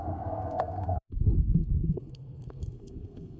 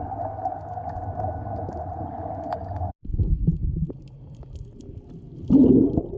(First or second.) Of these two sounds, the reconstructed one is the first